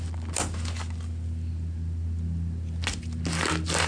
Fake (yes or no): no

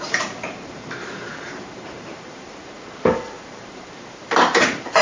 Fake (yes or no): yes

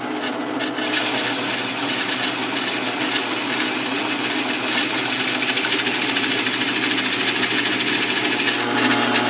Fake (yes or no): no